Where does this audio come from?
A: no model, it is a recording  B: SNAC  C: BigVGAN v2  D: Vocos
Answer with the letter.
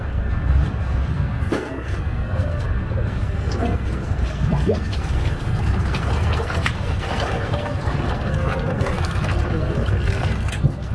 B